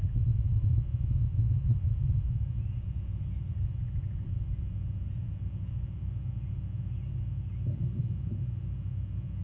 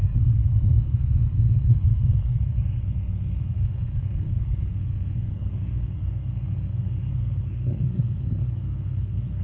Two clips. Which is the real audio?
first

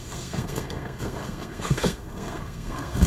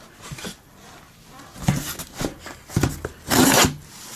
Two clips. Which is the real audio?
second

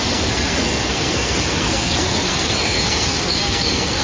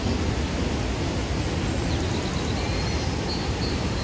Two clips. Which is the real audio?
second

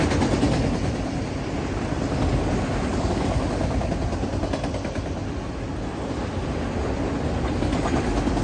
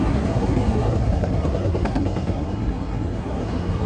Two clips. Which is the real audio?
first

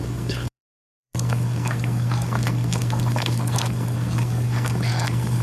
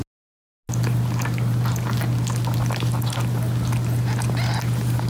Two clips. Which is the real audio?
second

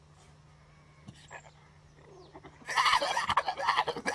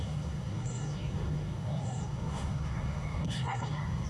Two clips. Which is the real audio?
first